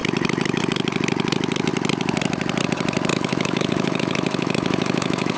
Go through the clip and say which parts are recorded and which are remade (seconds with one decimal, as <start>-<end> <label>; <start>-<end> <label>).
0.0-3.1 recorded; 3.1-5.4 remade